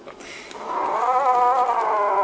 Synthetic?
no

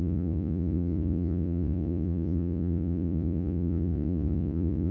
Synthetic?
yes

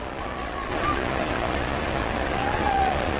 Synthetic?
yes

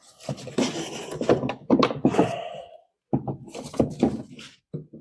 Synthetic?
no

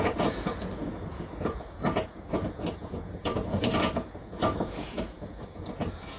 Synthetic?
yes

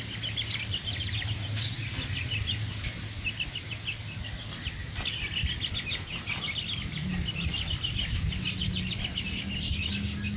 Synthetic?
no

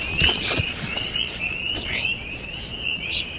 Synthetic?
yes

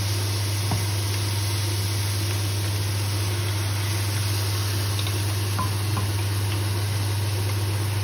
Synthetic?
no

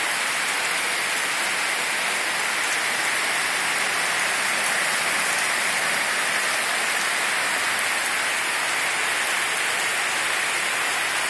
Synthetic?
no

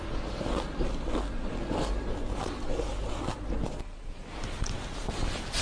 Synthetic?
no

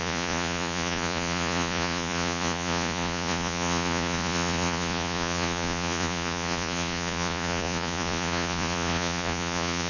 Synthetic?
yes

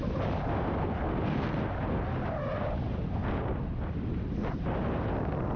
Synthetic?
no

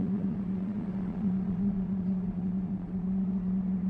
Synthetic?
yes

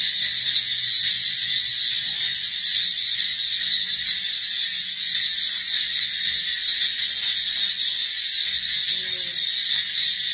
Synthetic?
no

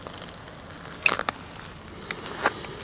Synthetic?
no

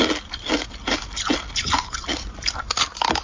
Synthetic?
no